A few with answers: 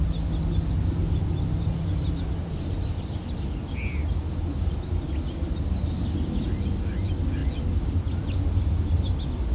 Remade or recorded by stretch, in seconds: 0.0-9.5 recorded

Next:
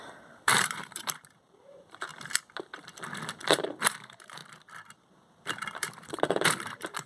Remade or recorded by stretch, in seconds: 0.0-2.1 remade; 2.1-3.5 recorded; 3.5-4.4 remade; 4.4-5.0 recorded; 5.0-7.1 remade

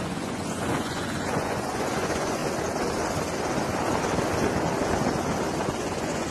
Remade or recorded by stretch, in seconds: 0.0-2.4 remade; 2.4-5.6 recorded; 5.6-6.3 remade

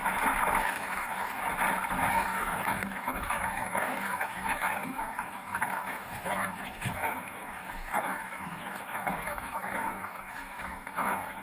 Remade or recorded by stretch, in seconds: 0.0-0.6 recorded; 0.6-1.4 remade; 1.4-2.1 recorded; 2.1-11.4 remade

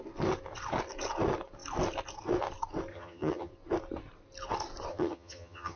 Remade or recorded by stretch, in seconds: 0.0-2.9 recorded; 2.9-3.5 remade; 3.5-4.9 recorded; 4.9-5.8 remade

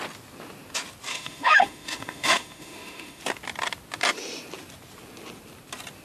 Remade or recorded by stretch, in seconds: 0.0-1.1 recorded; 1.1-3.2 remade; 3.2-6.0 recorded

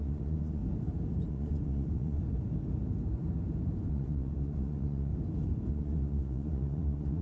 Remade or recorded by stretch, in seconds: 0.0-0.6 remade; 0.6-1.3 recorded; 1.3-2.2 remade; 2.2-3.9 recorded; 3.9-5.1 remade; 5.1-5.7 recorded; 5.7-7.2 remade